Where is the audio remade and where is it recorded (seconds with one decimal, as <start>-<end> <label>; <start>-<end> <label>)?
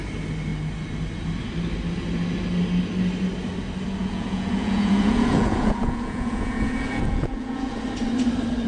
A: 0.0-4.0 recorded; 4.0-7.8 remade; 7.8-8.7 recorded